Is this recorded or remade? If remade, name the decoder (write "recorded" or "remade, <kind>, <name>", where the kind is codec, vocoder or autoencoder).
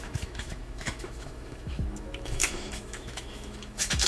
remade, autoencoder, DAC-VAE